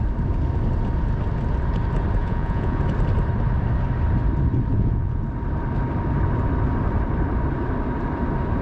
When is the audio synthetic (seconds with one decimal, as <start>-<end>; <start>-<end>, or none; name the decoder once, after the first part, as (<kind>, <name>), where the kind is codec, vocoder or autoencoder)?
2.2-2.8 (vocoder, Vocos); 4.7-5.2